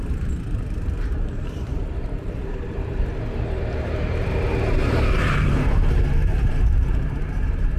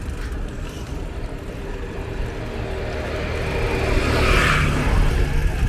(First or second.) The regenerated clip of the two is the first